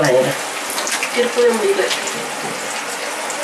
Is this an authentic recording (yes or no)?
yes